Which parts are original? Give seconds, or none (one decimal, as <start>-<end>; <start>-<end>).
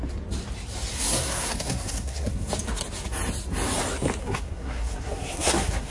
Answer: 0.0-0.9; 2.5-4.2